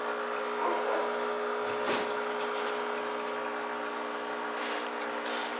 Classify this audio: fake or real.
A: real